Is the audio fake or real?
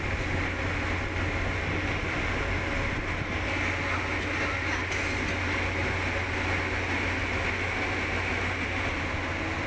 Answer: real